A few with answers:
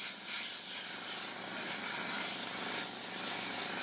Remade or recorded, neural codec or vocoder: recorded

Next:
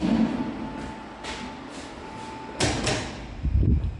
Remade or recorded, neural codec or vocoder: recorded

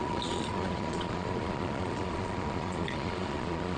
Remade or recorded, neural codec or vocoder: remade, vocoder, Vocos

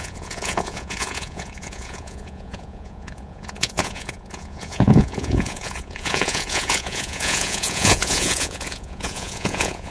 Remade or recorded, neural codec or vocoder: remade, vocoder, Vocos